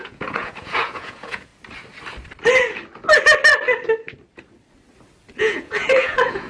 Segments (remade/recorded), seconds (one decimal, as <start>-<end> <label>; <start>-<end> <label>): 0.0-1.5 remade; 1.5-5.4 recorded; 5.4-6.5 remade